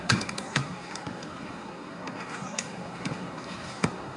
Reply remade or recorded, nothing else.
remade